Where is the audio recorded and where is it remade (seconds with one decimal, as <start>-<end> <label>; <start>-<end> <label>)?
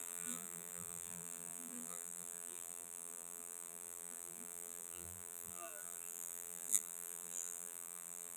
0.0-8.4 remade